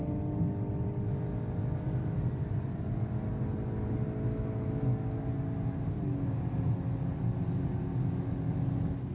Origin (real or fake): real